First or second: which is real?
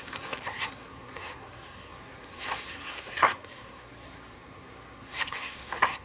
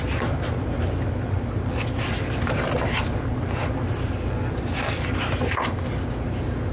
second